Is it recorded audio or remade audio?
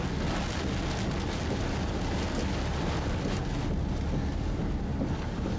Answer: recorded